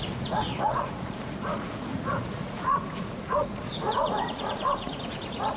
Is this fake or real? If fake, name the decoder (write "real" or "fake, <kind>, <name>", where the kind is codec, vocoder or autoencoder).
fake, vocoder, Vocos